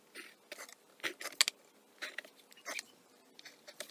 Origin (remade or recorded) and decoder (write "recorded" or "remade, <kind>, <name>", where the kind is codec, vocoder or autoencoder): recorded